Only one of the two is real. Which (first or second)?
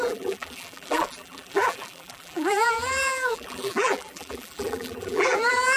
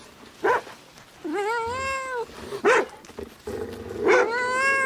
second